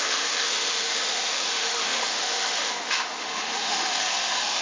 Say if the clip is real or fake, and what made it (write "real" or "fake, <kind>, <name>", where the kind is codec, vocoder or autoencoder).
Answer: fake, autoencoder, DAC-VAE